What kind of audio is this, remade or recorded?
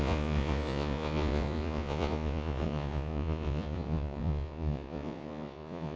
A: remade